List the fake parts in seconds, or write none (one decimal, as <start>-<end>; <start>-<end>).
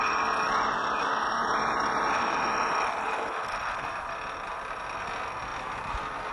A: none